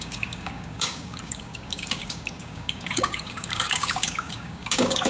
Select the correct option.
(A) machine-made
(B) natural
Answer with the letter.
A